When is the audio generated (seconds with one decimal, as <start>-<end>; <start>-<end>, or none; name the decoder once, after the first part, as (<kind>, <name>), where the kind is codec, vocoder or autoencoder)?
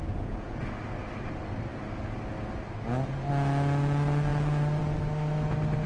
0.0-0.6 (vocoder, Vocos)